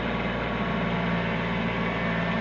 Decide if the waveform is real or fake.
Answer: real